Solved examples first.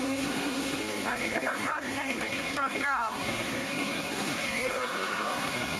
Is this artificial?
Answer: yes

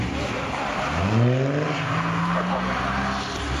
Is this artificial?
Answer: no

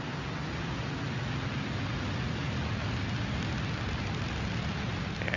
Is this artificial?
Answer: no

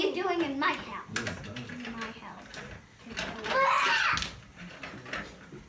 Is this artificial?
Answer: no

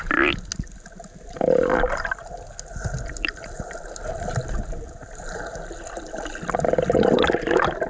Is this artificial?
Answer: no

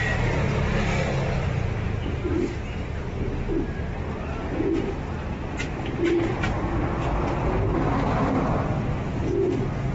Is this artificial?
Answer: no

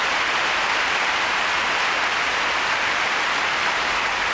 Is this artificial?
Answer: no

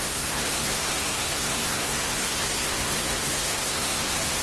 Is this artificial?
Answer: yes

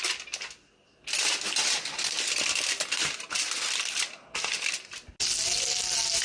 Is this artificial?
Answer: no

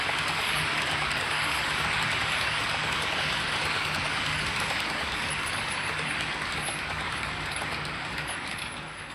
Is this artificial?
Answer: yes